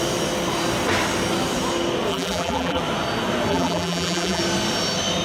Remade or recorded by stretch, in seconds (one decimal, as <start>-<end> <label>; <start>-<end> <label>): 0.0-2.1 recorded; 2.1-2.8 remade; 2.8-3.5 recorded; 3.5-4.4 remade; 4.4-5.2 recorded